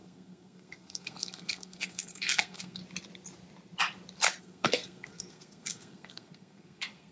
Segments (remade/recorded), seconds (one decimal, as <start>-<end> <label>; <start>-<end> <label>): 0.0-2.8 remade; 2.8-4.4 recorded; 4.4-7.1 remade